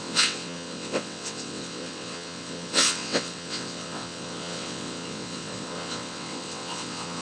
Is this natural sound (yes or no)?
no